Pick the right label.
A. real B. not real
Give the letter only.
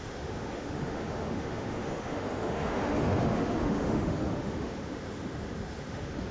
B